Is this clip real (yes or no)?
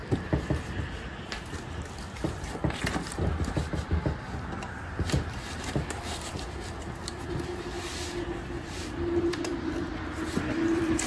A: no